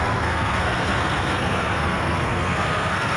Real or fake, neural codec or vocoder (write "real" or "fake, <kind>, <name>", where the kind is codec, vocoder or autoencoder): fake, codec, SNAC